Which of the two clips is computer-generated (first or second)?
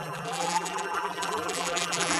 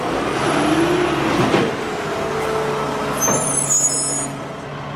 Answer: first